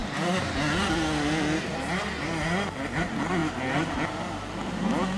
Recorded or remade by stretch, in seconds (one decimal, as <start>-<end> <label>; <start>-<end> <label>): 0.0-5.2 recorded